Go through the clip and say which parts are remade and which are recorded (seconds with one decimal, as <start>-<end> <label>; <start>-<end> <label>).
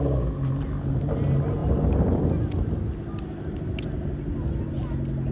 0.0-5.3 recorded